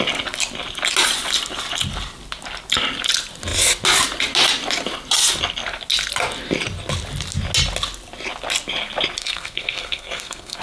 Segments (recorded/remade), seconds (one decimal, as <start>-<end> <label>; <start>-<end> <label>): 0.0-9.2 recorded; 9.2-10.6 remade